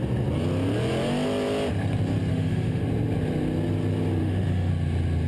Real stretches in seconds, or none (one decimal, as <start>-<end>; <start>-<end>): 0.0-2.3; 2.8-4.2; 4.7-5.3